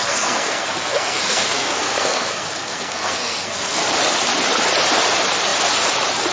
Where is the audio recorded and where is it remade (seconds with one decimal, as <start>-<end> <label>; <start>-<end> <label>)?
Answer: 0.0-3.8 remade; 3.8-6.3 recorded